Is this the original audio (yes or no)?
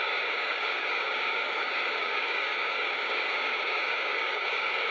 no